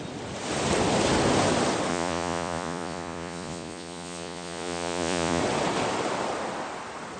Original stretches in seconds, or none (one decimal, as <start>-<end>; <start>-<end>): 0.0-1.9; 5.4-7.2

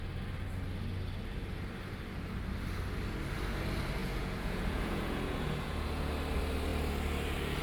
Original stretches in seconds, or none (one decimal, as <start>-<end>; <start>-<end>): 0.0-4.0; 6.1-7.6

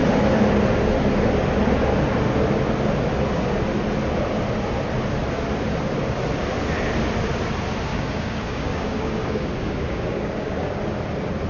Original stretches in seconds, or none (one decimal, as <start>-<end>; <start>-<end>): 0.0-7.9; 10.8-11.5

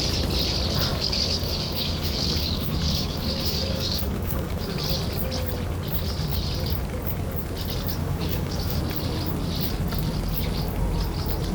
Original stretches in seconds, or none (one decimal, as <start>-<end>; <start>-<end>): 0.0-0.9; 4.8-8.0; 8.8-11.5

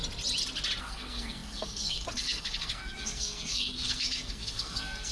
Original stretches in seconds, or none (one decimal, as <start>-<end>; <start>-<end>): 0.0-0.8